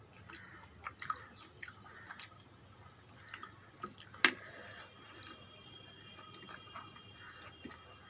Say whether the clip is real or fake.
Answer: real